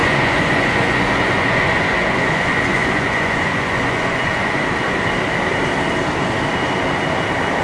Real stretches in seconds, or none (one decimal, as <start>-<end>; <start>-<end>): 4.6-7.6